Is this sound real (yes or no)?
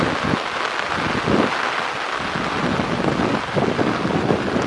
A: yes